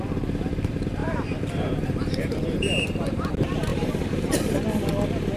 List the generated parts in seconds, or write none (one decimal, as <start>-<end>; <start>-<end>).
1.0-3.3; 3.7-4.4